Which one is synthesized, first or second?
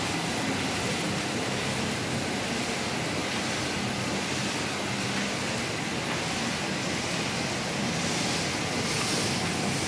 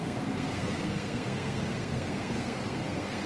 second